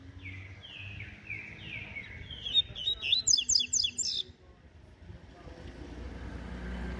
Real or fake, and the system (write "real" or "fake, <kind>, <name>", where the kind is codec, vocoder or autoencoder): real